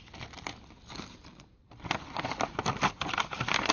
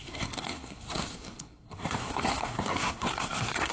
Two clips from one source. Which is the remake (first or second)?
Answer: second